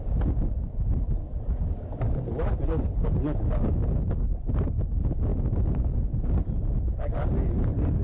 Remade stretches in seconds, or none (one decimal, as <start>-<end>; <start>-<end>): none